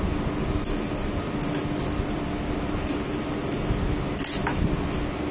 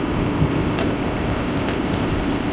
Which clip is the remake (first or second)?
second